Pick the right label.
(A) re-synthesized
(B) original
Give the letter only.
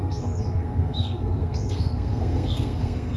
A